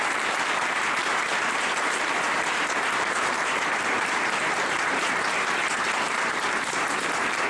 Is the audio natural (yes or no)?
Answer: no